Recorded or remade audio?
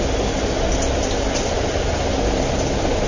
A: recorded